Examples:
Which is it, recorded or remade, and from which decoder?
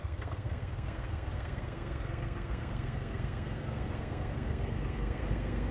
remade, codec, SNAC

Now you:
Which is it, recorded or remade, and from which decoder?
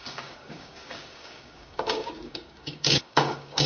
remade, codec, DAC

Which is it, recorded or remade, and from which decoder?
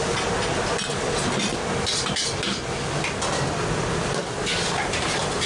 recorded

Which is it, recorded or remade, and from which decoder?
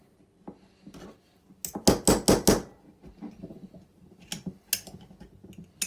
recorded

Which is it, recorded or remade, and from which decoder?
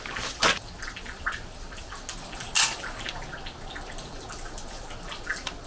recorded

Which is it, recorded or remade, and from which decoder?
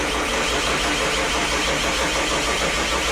recorded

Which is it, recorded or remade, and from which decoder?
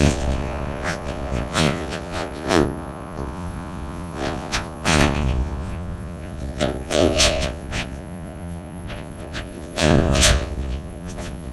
remade, vocoder, Vocos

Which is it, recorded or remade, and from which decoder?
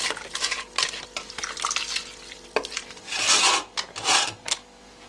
remade, vocoder, BigVGAN v2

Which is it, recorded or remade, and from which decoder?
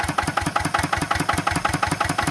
recorded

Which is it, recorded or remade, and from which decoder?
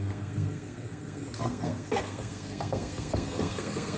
remade, codec, SNAC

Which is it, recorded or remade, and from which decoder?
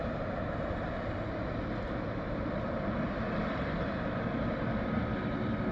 recorded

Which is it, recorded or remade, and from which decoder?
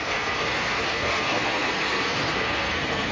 remade, codec, SNAC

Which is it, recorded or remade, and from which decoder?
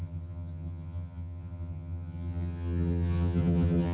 remade, vocoder, HiFi-GAN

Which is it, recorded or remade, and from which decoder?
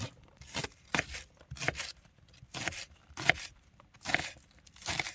recorded